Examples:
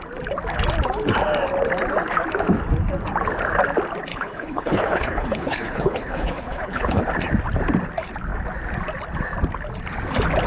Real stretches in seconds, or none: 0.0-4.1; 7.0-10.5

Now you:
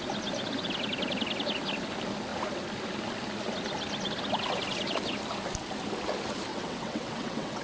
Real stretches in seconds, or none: 0.0-6.5

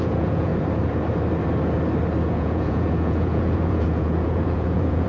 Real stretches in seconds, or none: 0.5-2.3

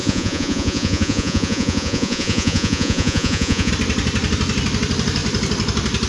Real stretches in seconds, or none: 3.7-6.1

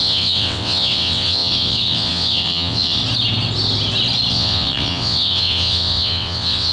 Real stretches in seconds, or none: 3.0-4.3

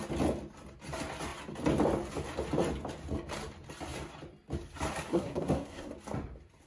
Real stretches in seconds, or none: 0.0-5.1; 5.9-6.7

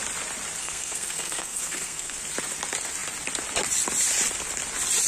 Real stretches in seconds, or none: 0.0-0.6; 2.2-5.1